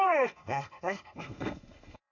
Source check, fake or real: fake